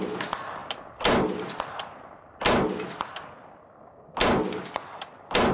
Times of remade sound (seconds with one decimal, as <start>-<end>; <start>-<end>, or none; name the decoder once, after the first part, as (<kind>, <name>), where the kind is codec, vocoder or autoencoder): none